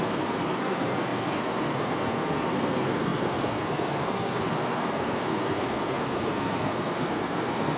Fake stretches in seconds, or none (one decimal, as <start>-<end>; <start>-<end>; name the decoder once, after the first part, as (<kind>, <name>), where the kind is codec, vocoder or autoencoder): 0.0-7.8 (codec, SNAC)